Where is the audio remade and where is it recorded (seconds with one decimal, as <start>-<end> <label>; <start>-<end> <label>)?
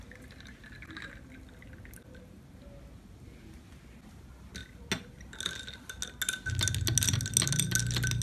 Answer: 0.0-8.2 recorded